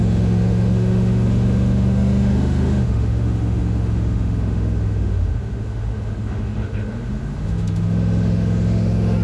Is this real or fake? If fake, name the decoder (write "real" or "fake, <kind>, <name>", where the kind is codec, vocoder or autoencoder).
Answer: fake, autoencoder, DAC-VAE